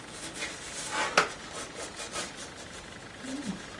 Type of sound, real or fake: real